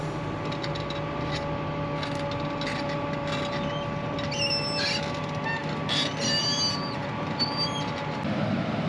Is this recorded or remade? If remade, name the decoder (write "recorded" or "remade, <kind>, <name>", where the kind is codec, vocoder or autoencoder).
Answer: recorded